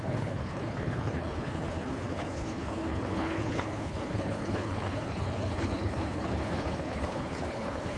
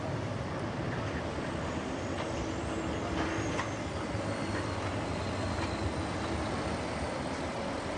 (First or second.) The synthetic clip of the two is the first